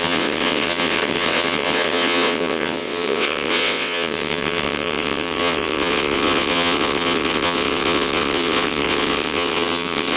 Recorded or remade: remade